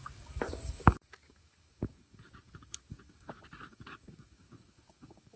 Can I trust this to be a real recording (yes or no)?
no